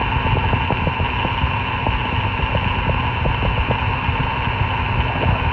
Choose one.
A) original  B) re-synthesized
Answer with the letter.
A